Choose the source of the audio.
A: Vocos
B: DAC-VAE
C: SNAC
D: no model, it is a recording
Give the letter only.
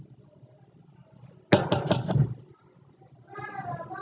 D